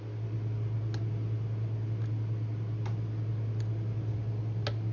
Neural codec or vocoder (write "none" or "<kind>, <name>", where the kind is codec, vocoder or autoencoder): none